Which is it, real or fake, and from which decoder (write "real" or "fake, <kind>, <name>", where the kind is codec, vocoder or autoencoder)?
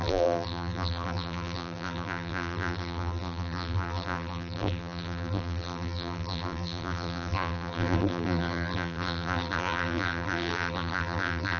fake, vocoder, BigVGAN v2